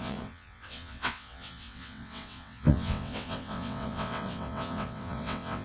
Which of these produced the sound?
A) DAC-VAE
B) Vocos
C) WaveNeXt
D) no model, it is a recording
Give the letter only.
C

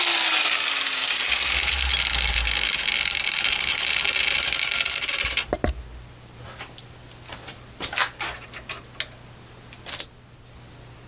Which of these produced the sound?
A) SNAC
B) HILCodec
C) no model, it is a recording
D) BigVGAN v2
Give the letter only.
C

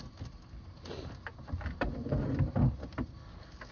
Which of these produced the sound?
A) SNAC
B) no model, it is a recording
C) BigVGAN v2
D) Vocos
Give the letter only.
B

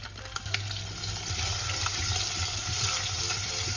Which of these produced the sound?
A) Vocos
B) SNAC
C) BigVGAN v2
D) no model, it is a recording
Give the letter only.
D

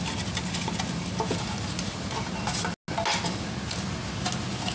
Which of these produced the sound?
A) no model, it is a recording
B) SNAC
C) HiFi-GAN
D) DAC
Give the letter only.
A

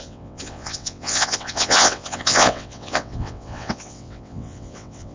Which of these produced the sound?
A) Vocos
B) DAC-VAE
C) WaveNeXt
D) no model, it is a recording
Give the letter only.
C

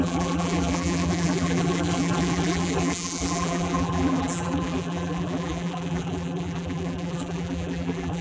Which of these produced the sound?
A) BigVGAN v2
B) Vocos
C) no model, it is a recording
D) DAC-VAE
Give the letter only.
A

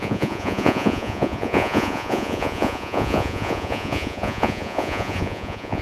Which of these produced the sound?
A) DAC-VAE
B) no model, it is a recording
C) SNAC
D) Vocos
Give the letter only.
D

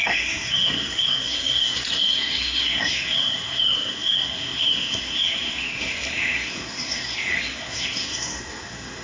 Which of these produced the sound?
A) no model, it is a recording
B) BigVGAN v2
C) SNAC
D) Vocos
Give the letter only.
C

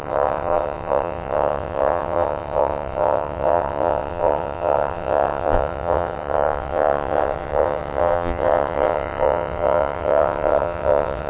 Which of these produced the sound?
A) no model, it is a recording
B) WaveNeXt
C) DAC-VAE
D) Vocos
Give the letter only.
B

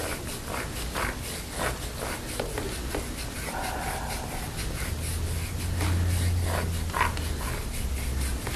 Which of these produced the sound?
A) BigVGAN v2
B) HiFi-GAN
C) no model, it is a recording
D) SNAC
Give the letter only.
C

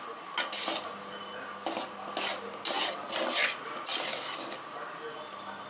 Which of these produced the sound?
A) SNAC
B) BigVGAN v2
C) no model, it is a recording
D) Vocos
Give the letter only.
C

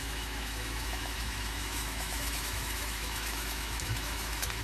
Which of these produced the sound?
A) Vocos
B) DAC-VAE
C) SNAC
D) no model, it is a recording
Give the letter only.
B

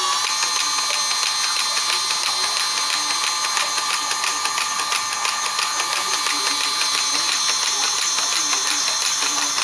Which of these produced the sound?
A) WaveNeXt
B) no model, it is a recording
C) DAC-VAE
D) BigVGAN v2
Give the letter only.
B